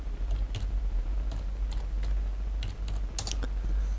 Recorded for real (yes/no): yes